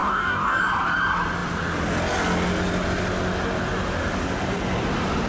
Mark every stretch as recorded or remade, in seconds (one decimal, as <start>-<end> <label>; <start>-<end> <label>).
0.0-0.6 remade; 0.6-5.3 recorded